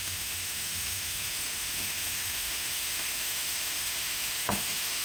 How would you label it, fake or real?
fake